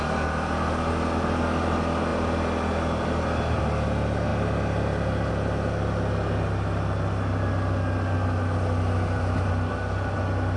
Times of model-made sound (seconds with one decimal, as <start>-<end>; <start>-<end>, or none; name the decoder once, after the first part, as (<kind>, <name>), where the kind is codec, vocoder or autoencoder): none